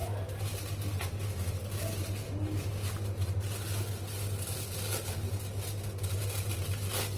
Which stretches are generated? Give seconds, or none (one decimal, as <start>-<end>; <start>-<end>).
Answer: none